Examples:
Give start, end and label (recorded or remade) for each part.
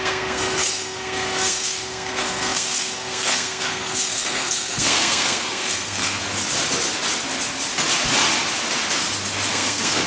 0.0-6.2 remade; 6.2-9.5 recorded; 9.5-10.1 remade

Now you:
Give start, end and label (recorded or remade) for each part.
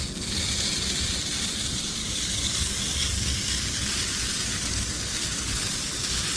0.0-2.0 recorded; 2.0-5.8 remade; 5.8-6.4 recorded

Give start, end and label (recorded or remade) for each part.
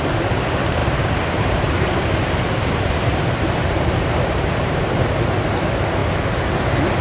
0.0-0.8 recorded; 0.8-5.0 remade; 5.0-7.0 recorded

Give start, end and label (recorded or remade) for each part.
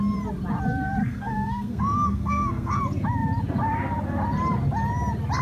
0.0-1.0 recorded; 1.0-2.8 remade; 2.8-5.4 recorded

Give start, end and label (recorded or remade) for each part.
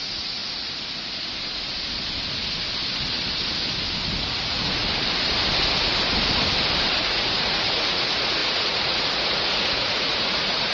0.0-0.4 remade; 0.4-4.2 recorded; 4.2-4.8 remade; 4.8-6.9 recorded; 6.9-10.7 remade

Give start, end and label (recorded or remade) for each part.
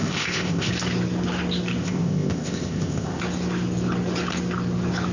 0.0-0.7 remade; 0.7-1.8 recorded; 1.8-3.2 remade; 3.2-5.1 recorded